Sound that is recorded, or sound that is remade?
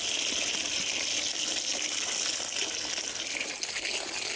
recorded